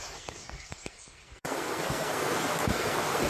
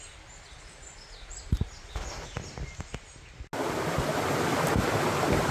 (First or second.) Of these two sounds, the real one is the second